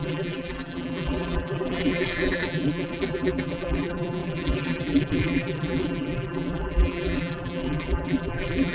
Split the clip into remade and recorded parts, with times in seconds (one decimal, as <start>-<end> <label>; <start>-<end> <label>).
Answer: 0.0-8.7 remade